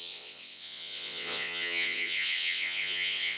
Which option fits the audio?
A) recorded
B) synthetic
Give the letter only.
B